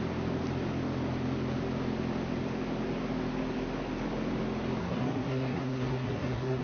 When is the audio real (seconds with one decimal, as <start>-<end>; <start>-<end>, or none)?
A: 0.0-4.8